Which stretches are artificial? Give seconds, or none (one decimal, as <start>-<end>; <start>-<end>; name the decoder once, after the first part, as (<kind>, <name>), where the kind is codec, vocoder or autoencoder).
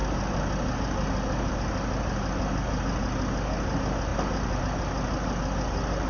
none